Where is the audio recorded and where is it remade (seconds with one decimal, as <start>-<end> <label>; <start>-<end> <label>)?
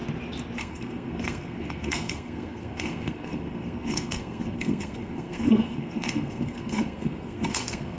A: 0.0-0.6 recorded; 0.6-8.0 remade